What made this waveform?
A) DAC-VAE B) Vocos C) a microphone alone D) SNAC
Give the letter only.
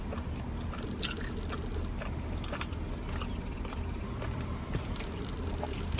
C